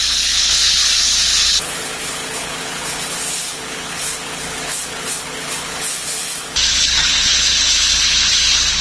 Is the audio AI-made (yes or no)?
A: yes